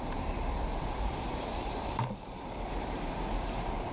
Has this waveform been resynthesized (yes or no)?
yes